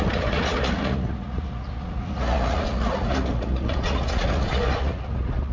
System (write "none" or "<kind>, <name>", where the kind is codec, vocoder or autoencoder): vocoder, Vocos